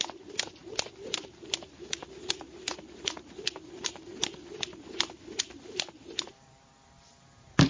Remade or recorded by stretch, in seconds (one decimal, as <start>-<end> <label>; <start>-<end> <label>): 0.0-7.7 remade